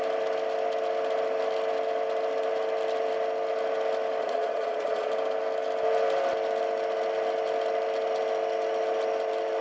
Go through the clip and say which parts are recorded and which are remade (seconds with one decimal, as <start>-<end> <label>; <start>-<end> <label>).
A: 0.0-4.2 recorded; 4.2-5.1 remade; 5.1-9.6 recorded